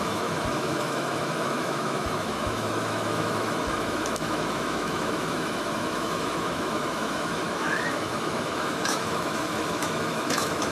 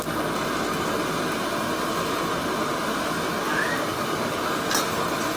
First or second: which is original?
second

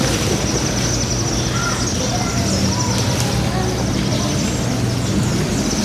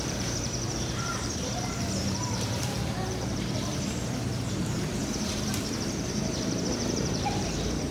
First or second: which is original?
first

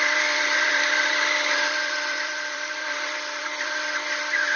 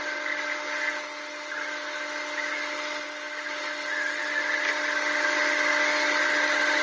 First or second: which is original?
second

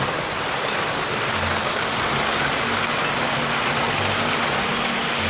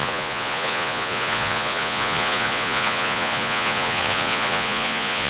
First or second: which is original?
first